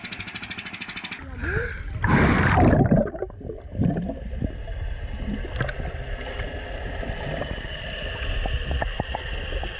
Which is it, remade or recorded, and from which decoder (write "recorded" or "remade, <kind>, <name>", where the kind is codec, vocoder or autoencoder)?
recorded